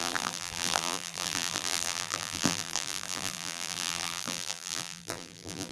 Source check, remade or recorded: remade